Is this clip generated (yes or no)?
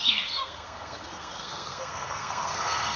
yes